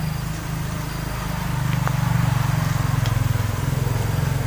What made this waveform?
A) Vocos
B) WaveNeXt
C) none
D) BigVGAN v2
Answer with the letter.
C